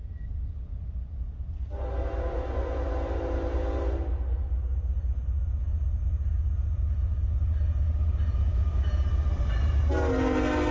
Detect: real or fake real